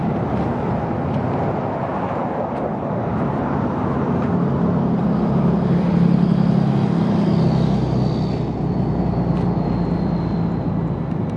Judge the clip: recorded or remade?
recorded